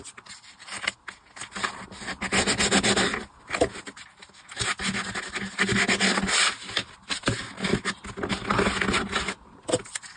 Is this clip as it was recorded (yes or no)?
yes